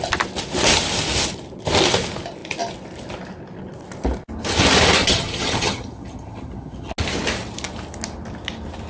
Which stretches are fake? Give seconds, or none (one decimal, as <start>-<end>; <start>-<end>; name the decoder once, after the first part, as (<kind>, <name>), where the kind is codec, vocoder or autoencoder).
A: 5.0-6.9 (vocoder, HiFi-GAN)